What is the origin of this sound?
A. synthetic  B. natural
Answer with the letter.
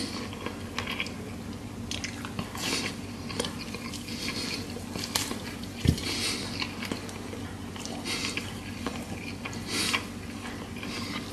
B